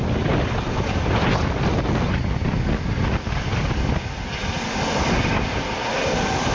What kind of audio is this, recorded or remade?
recorded